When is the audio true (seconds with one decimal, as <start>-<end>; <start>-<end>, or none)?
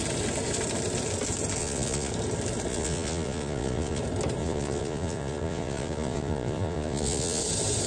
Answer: 0.0-1.6; 2.1-2.7; 4.0-4.4; 7.4-7.9